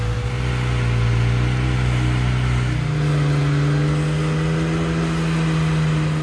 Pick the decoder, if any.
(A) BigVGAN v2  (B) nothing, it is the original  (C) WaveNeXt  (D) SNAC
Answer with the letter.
B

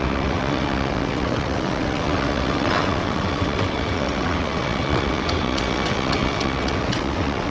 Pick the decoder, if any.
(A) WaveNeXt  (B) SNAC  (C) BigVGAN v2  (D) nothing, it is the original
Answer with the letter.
A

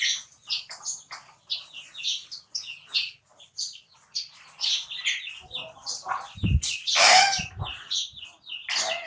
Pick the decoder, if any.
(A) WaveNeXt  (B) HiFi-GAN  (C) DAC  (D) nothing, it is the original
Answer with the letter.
D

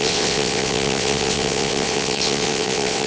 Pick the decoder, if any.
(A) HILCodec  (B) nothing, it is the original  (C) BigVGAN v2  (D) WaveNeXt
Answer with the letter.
D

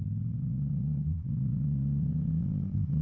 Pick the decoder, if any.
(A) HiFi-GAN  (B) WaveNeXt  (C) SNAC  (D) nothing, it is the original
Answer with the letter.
B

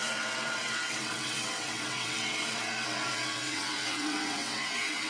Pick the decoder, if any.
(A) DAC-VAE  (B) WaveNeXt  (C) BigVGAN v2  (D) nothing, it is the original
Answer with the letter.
B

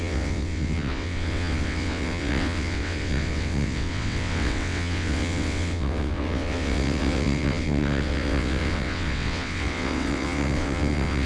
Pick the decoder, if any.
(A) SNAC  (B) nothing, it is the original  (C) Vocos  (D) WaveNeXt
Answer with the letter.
D